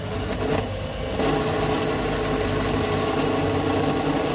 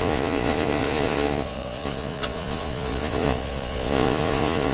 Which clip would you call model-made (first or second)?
second